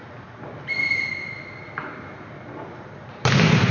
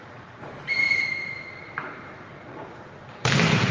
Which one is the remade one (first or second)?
second